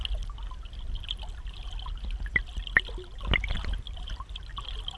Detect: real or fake real